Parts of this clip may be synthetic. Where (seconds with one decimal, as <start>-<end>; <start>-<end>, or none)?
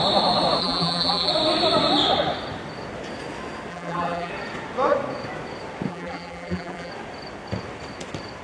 0.6-1.3; 3.7-4.3; 5.9-6.9